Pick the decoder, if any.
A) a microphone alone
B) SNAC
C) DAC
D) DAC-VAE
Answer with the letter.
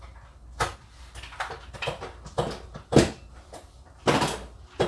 A